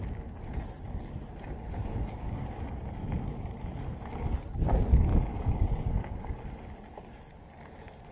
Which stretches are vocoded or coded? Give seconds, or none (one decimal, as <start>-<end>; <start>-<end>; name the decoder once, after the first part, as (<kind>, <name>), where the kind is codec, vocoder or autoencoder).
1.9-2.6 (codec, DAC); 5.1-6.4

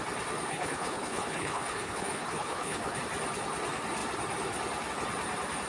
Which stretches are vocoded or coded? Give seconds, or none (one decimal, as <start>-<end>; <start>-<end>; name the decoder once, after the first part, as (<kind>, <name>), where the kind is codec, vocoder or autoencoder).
0.5-3.0 (codec, HILCodec)

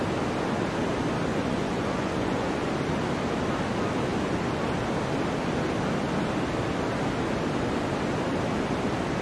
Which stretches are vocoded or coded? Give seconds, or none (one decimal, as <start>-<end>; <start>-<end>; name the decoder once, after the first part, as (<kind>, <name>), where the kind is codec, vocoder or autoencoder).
1.3-2.7 (vocoder, Vocos)

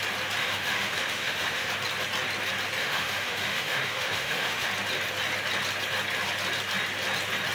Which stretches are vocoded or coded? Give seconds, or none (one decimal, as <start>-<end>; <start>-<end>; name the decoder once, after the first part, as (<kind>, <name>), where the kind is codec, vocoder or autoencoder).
0.4-1.7 (autoencoder, DAC-VAE); 2.8-4.7

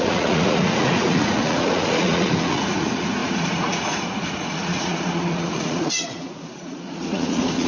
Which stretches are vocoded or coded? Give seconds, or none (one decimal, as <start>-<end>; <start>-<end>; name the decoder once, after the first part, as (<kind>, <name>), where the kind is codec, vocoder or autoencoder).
0.0-7.7 (vocoder, Vocos)

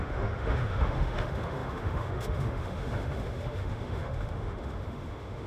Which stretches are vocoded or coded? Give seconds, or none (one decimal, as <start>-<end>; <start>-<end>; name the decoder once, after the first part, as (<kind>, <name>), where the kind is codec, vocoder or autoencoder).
0.0-5.5 (autoencoder, DAC-VAE)

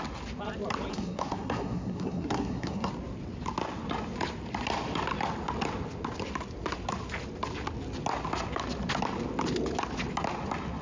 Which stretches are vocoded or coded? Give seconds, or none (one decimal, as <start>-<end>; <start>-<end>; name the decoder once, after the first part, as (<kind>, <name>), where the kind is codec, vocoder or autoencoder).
0.9-2.9 (codec, SNAC)

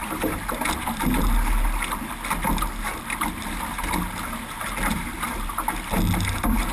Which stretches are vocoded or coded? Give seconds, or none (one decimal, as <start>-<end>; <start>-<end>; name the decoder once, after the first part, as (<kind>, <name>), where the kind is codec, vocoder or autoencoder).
none